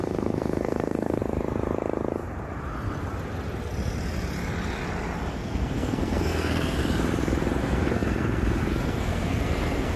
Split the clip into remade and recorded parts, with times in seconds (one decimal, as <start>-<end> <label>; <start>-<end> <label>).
0.0-1.2 remade; 1.2-5.3 recorded; 5.3-6.8 remade; 6.8-7.6 recorded; 7.6-10.0 remade